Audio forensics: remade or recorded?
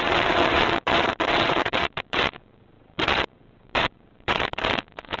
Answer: remade